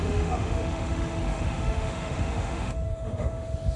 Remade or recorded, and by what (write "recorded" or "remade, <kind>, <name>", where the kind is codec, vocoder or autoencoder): remade, autoencoder, DAC-VAE